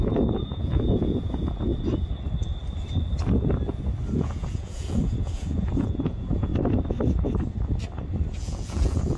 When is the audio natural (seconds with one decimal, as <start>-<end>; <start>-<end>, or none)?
1.7-4.1; 6.5-8.4